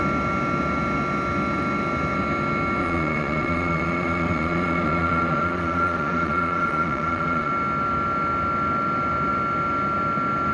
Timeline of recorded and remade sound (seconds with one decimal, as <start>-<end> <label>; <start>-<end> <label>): 0.0-2.8 recorded; 2.8-7.5 remade; 7.5-10.5 recorded